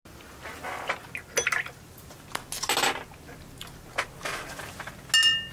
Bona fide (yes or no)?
yes